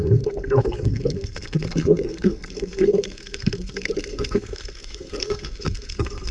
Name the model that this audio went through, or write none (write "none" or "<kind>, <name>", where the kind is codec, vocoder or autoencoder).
codec, SNAC